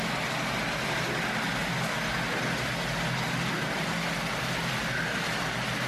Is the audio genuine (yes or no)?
yes